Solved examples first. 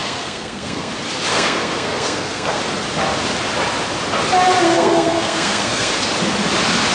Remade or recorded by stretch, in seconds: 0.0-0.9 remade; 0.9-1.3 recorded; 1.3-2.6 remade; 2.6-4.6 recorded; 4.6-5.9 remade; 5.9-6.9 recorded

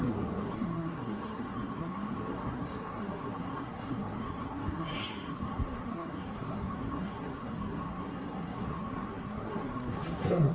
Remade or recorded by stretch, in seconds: 0.0-10.5 remade

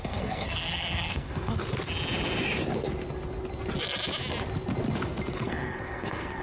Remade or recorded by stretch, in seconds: 0.0-1.5 remade; 1.5-5.3 recorded; 5.3-6.4 remade

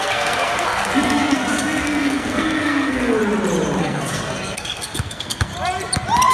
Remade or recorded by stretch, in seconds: 0.0-3.2 remade; 3.2-3.8 recorded; 3.8-5.5 remade; 5.5-6.3 recorded

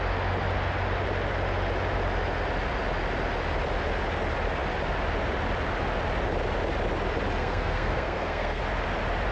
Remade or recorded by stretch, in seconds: 0.0-7.4 recorded; 7.4-8.6 remade; 8.6-9.3 recorded

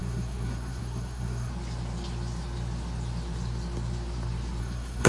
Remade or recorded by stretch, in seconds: 0.0-1.5 remade; 1.5-4.6 recorded; 4.6-5.1 remade

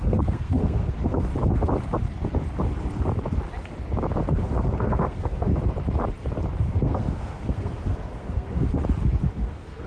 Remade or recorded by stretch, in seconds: 0.0-1.3 remade; 1.3-4.4 recorded; 4.4-5.5 remade; 5.5-6.6 recorded; 6.6-8.7 remade; 8.7-9.3 recorded; 9.3-9.9 remade

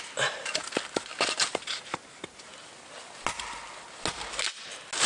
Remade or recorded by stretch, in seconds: 0.0-5.1 recorded